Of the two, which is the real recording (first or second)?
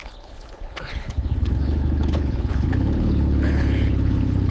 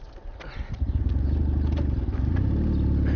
second